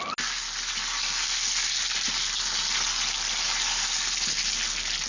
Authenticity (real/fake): real